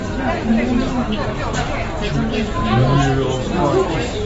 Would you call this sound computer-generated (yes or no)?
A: no